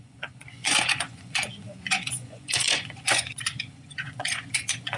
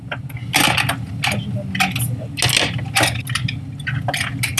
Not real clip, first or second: first